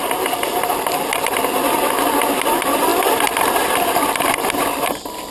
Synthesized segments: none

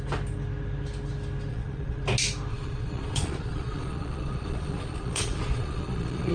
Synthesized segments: 1.5-2.0 (vocoder, Vocos); 2.5-6.3

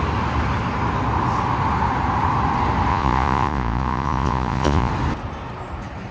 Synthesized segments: 2.9-4.9 (vocoder, Vocos)